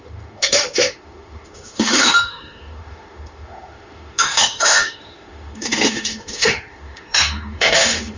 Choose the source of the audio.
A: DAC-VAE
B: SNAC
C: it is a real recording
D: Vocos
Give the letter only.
A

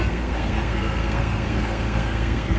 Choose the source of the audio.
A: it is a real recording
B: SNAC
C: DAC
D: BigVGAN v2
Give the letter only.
B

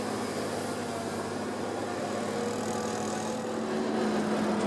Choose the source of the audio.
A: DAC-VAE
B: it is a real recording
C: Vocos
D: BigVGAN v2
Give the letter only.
B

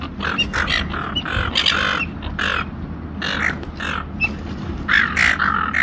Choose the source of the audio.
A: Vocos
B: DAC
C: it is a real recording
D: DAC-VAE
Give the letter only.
C